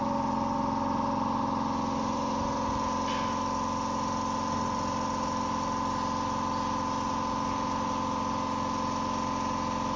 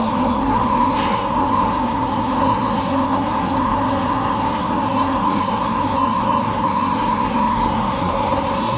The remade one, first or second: second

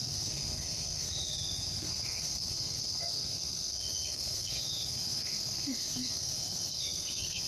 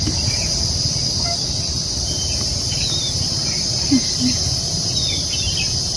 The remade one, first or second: first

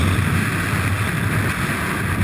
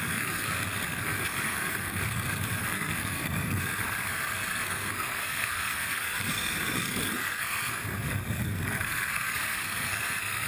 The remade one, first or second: second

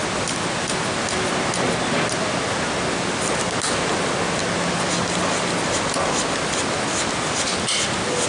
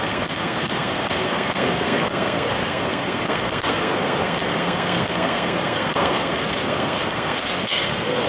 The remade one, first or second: second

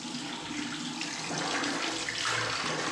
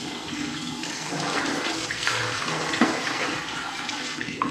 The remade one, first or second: second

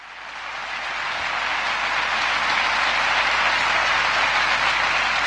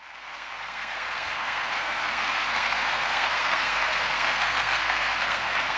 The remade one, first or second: second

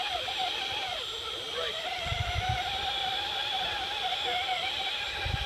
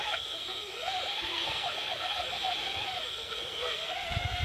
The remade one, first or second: second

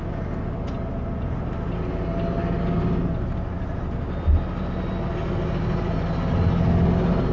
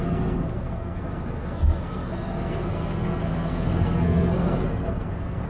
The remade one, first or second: second